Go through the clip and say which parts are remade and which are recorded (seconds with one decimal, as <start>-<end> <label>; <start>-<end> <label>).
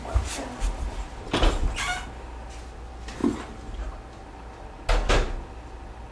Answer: 0.0-6.1 recorded